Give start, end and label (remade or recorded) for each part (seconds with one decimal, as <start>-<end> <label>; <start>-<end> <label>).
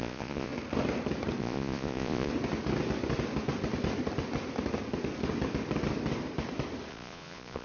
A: 0.0-0.5 remade; 0.5-1.4 recorded; 1.4-2.3 remade; 2.3-6.9 recorded; 6.9-7.6 remade